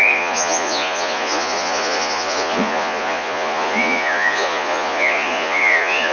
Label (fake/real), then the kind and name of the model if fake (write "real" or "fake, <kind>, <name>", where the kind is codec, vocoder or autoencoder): fake, vocoder, Vocos